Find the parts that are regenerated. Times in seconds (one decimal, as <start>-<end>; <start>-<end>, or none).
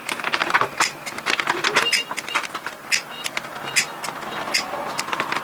none